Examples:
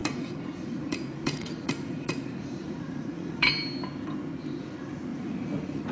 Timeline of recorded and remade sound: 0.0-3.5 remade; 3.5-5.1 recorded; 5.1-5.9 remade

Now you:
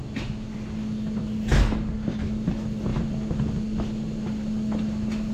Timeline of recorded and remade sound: 0.0-2.9 recorded; 2.9-3.4 remade; 3.4-5.3 recorded

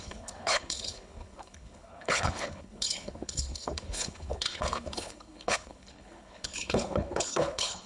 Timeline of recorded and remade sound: 0.0-7.9 remade